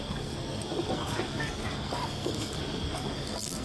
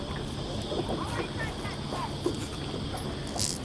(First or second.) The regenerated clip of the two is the first